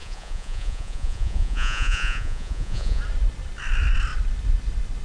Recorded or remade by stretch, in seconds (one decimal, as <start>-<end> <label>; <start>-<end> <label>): 0.0-3.0 remade; 3.0-5.0 recorded